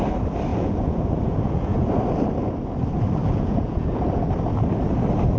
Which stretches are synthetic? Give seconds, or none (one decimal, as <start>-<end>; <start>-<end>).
0.5-1.9; 3.2-4.3